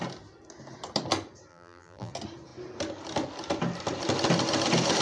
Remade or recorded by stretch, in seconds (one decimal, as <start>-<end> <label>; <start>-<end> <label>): 0.0-1.5 recorded; 1.5-2.1 remade; 2.1-5.0 recorded